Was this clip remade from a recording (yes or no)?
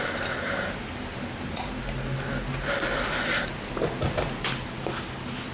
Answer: no